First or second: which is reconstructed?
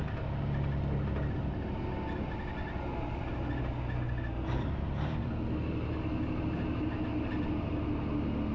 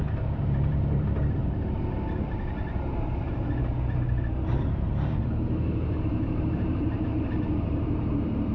second